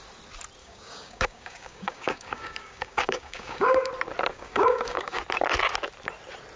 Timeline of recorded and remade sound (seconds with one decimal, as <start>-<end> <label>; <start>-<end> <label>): 0.0-0.6 recorded; 0.6-3.9 remade; 3.9-4.3 recorded; 4.3-5.2 remade; 5.2-6.6 recorded